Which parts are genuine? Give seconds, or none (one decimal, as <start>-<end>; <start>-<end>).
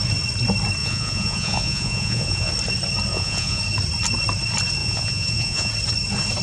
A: 0.0-0.8; 2.5-3.1; 3.6-4.8; 5.7-6.4